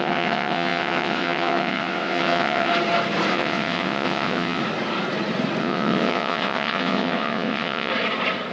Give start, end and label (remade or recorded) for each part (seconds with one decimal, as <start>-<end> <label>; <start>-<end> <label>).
0.0-2.7 remade; 2.7-3.3 recorded; 3.3-4.6 remade; 4.6-5.6 recorded; 5.6-7.9 remade; 7.9-8.5 recorded